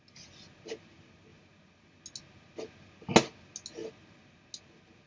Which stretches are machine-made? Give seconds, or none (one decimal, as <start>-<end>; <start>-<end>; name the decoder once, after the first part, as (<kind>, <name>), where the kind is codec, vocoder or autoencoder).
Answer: none